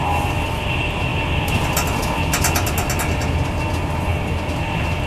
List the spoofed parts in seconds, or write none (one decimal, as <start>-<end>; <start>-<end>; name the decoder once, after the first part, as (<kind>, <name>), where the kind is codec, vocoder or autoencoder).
none